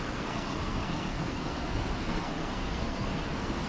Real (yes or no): no